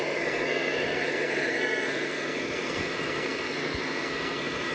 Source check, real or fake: fake